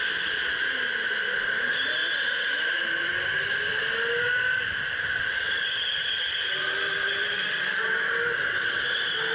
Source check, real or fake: real